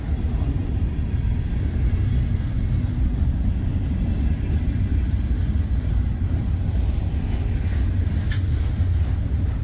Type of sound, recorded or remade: recorded